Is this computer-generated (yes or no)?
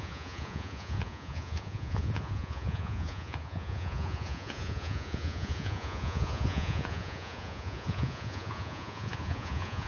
yes